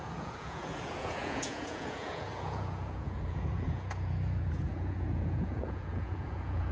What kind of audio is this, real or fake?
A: fake